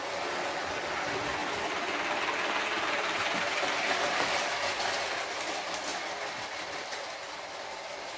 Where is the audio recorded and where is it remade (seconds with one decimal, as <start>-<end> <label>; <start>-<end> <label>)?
0.0-8.2 recorded